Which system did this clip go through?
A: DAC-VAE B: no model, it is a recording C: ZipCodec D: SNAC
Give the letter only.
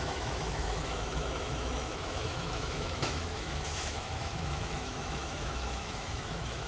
A